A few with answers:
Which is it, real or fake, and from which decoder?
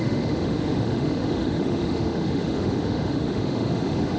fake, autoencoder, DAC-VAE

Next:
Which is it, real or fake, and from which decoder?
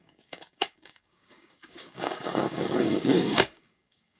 fake, codec, DAC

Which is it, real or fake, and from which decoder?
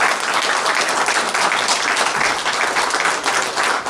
real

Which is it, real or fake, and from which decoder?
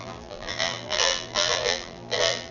fake, vocoder, BigVGAN v2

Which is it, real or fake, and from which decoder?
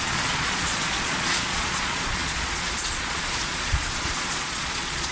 fake, vocoder, Vocos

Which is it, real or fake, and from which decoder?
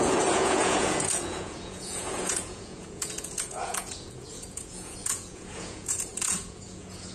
fake, vocoder, Vocos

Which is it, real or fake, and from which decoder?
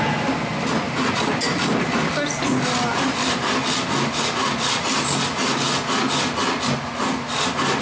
real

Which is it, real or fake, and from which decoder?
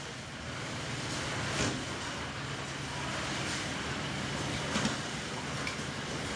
real